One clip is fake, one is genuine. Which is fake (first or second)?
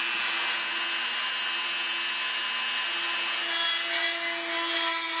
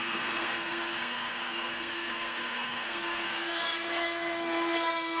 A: second